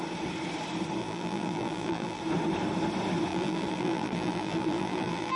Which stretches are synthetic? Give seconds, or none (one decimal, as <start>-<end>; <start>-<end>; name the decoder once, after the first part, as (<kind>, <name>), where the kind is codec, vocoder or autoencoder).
1.0-2.2 (vocoder, BigVGAN v2); 3.3-5.4